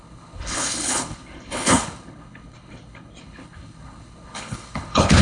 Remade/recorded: remade